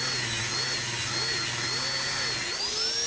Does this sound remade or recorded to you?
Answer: recorded